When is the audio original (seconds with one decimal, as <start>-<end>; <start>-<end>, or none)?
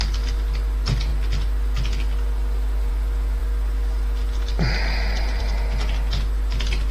0.0-6.9